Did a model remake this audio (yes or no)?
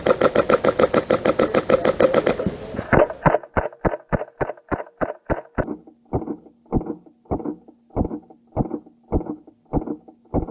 no